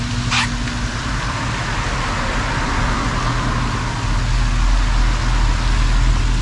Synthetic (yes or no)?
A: no